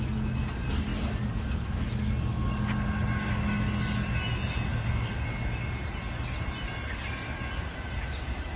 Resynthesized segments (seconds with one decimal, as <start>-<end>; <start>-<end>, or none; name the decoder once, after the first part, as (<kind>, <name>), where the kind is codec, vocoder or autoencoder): none